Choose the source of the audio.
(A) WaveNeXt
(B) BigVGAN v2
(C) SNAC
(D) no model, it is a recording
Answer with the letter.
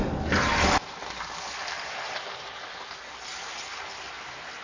D